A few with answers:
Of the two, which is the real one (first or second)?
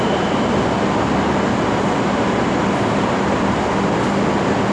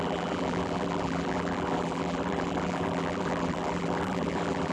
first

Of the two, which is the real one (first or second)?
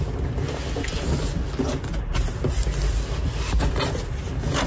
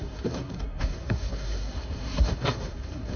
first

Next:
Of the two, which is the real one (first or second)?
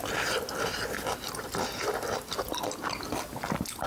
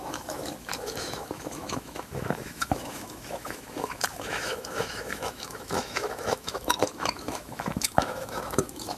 first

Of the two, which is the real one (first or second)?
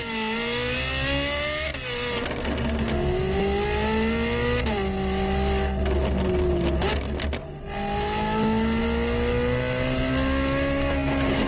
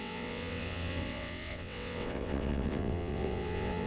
first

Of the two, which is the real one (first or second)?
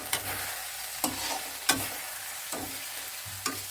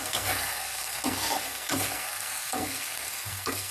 first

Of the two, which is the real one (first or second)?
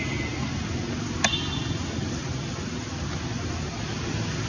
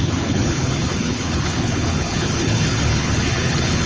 first